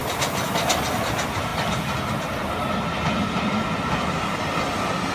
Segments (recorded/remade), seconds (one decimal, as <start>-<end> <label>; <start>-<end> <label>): 0.0-5.1 recorded